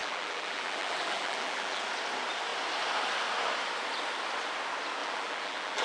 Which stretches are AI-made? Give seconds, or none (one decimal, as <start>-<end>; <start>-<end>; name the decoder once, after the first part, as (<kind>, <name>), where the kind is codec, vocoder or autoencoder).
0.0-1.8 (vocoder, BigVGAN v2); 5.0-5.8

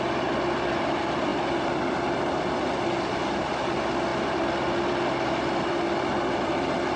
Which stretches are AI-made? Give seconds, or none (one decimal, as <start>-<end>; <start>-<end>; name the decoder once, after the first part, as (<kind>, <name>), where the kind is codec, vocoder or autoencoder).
none

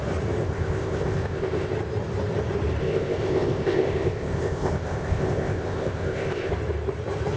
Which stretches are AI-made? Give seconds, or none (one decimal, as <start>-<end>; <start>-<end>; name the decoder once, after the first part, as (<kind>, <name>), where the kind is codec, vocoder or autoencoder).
0.4-1.7 (codec, ZipCodec); 2.8-6.5

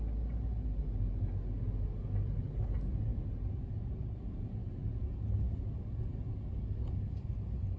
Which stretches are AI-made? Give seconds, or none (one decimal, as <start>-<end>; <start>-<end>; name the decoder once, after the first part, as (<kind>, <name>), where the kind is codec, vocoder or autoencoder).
none